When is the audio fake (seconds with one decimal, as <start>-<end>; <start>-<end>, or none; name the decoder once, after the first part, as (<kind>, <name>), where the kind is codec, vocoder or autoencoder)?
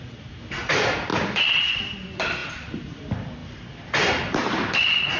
1.1-1.8 (vocoder, BigVGAN v2); 2.4-3.0; 3.4-5.2